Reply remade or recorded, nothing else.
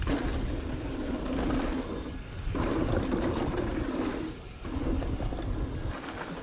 recorded